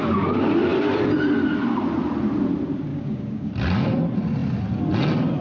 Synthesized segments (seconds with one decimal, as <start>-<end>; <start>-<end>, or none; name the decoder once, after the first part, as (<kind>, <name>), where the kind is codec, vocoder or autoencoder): 2.9-3.5 (codec, DAC)